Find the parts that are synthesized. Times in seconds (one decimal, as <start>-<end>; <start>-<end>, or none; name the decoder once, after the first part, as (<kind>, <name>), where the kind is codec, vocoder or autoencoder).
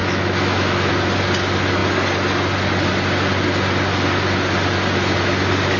0.0-0.9 (autoencoder, DAC-VAE)